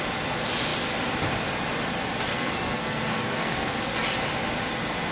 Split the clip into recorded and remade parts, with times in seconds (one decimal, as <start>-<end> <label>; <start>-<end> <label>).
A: 0.0-2.3 recorded; 2.3-3.8 remade; 3.8-5.1 recorded